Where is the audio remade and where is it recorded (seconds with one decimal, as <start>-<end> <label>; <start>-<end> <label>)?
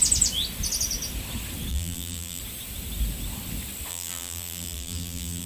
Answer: 0.0-1.7 recorded; 1.7-2.4 remade; 2.4-3.9 recorded; 3.9-5.5 remade